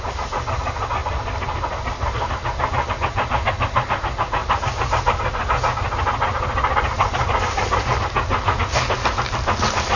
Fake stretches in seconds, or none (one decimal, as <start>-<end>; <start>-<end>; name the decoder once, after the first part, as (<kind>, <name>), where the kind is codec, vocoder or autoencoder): none